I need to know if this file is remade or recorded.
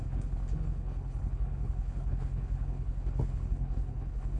remade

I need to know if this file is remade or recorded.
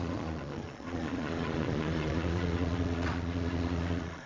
remade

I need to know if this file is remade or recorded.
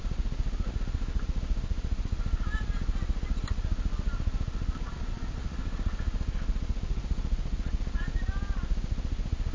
recorded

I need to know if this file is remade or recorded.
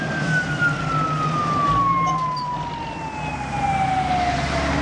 recorded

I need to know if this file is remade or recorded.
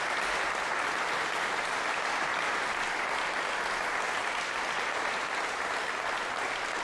recorded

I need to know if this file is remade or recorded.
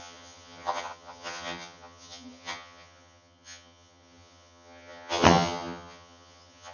remade